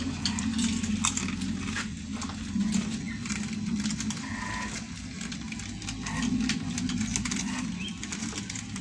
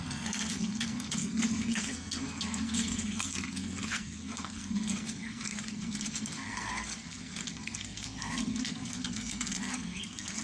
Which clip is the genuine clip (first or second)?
first